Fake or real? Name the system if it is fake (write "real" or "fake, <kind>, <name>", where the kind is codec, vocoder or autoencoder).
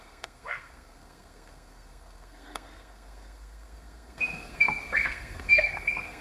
fake, codec, SNAC